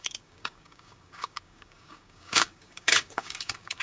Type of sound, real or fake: fake